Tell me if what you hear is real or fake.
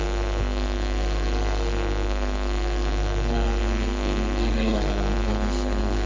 fake